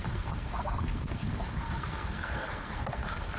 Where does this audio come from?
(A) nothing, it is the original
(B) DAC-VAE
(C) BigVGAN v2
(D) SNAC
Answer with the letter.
D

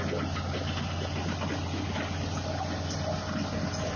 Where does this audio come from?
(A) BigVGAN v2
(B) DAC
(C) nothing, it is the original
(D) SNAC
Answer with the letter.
C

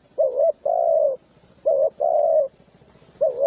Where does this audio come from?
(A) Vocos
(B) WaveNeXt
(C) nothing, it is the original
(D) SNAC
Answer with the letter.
C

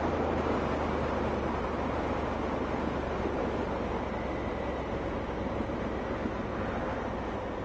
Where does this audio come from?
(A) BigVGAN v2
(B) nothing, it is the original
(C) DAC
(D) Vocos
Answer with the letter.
B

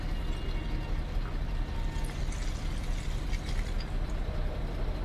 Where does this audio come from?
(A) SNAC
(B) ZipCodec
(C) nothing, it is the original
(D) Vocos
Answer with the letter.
C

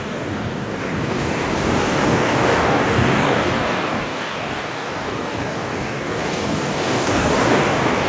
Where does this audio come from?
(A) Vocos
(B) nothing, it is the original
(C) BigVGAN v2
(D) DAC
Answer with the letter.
D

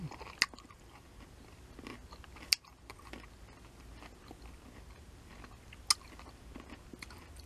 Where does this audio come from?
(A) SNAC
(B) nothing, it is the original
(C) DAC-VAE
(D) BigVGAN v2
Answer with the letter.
B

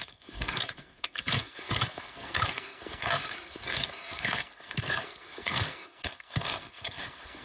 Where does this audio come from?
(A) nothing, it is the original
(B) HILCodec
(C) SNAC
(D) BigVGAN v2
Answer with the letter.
C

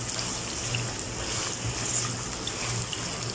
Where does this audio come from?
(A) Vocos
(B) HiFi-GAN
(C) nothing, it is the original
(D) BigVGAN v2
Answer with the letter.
C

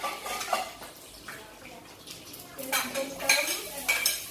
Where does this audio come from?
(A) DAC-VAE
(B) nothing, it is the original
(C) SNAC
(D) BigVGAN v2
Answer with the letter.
B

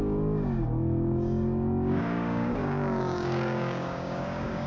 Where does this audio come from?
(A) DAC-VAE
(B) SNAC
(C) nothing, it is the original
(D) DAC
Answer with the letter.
D